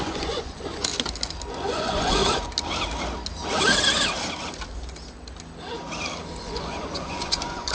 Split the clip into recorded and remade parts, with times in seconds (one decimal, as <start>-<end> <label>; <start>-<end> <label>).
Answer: 0.0-0.9 remade; 0.9-1.5 recorded; 1.5-2.2 remade; 2.2-6.4 recorded; 6.4-7.7 remade